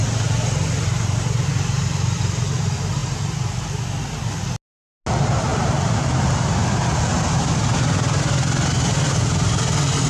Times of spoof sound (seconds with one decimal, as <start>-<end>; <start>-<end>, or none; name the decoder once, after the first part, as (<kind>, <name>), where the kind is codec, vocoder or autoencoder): 5.5-6.3 (vocoder, BigVGAN v2)